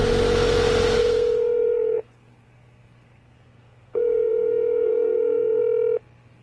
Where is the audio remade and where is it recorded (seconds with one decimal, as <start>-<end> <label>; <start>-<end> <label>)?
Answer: 0.0-1.0 recorded; 1.0-5.6 remade; 5.6-6.4 recorded